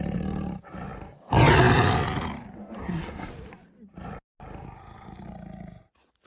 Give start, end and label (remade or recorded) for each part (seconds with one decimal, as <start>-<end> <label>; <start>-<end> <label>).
0.0-2.8 recorded; 2.8-3.3 remade; 3.3-6.3 recorded